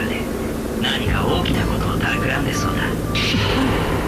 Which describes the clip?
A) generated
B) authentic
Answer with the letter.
B